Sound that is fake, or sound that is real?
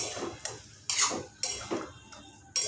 real